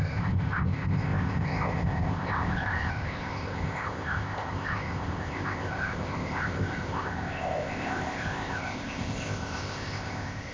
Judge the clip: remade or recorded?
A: remade